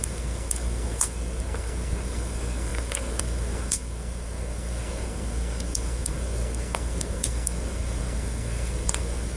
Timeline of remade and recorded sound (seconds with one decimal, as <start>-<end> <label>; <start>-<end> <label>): 0.0-9.4 remade